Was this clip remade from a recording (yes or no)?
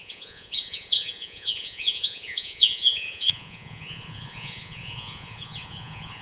yes